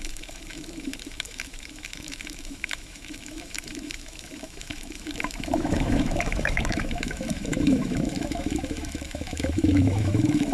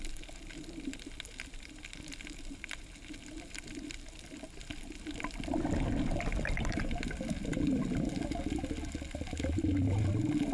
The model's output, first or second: first